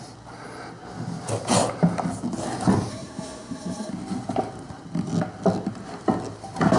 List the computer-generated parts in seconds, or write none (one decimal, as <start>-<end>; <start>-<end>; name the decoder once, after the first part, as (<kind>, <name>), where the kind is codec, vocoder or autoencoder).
2.9-3.9 (codec, SNAC)